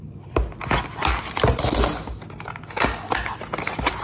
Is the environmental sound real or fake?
real